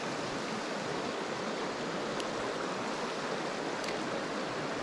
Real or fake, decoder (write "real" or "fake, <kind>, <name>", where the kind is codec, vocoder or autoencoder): real